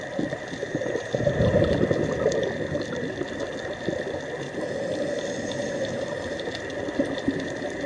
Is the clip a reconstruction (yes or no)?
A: no